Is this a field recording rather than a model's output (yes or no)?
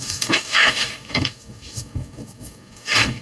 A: no